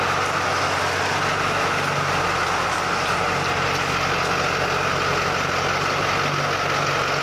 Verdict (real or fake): real